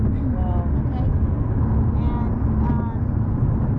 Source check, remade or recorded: recorded